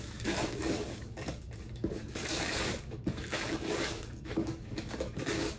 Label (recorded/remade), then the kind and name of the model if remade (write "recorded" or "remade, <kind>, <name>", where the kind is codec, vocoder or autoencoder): remade, codec, DAC